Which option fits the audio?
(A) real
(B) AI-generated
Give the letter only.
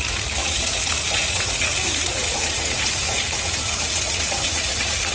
B